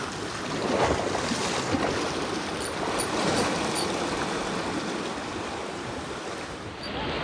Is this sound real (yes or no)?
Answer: yes